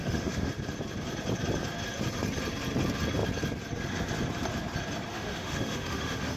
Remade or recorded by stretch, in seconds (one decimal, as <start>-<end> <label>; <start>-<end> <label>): 0.0-0.5 remade; 0.5-5.1 recorded; 5.1-6.4 remade